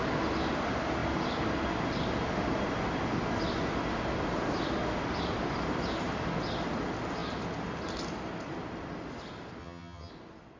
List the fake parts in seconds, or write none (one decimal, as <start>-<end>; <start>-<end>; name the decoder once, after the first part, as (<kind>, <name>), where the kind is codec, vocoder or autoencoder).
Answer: 9.6-10.1 (vocoder, HiFi-GAN)